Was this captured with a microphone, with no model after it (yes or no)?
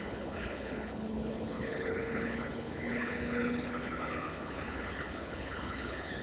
no